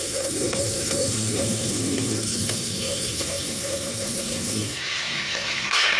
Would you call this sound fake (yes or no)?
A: yes